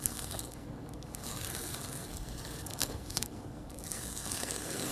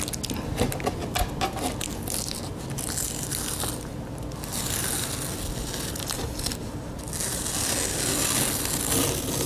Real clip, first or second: second